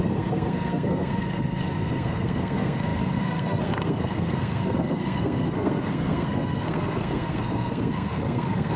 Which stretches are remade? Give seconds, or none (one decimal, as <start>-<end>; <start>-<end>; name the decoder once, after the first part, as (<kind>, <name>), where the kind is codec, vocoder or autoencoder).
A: 0.0-8.8 (codec, SNAC)